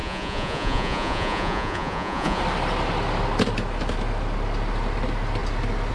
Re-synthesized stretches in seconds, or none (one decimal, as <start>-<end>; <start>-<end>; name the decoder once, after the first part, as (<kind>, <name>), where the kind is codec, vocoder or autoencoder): 0.0-2.4 (vocoder, Vocos)